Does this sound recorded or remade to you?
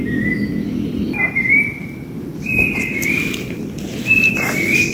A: remade